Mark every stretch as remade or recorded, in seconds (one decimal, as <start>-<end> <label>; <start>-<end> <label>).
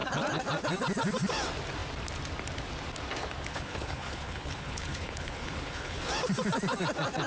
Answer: 0.0-3.5 recorded; 3.5-6.1 remade; 6.1-7.3 recorded